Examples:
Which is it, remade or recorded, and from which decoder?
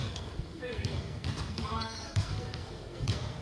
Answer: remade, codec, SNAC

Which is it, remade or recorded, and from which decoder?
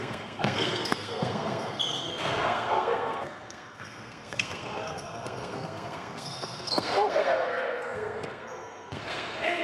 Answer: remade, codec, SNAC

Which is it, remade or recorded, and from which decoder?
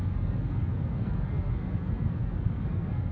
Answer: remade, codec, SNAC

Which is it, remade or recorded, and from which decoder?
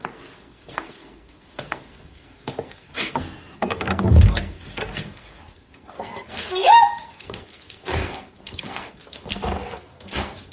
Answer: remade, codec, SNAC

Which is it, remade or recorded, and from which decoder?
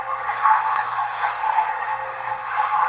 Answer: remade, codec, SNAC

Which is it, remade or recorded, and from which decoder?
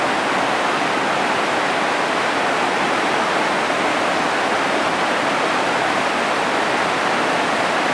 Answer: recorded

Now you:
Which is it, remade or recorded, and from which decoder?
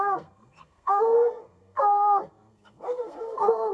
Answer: remade, codec, SNAC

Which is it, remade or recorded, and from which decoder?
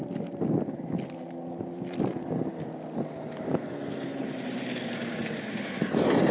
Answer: recorded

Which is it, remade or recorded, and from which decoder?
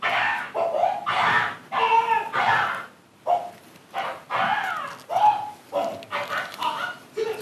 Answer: recorded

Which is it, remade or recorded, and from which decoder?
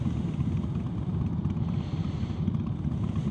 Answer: recorded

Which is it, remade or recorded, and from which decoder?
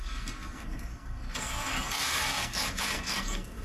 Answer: remade, codec, SNAC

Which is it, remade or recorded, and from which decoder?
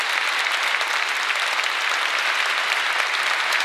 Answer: recorded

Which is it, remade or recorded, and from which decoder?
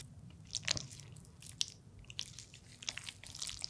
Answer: recorded